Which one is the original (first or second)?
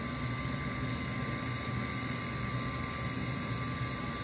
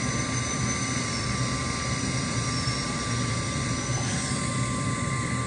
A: first